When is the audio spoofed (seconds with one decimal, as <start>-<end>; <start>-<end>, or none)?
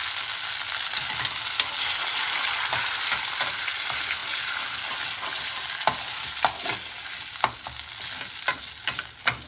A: none